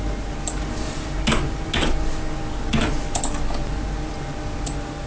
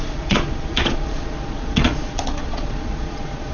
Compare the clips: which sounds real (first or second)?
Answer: first